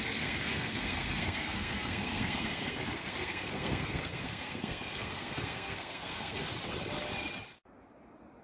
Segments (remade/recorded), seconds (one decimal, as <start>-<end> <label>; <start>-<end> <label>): 0.0-6.5 remade; 6.5-8.4 recorded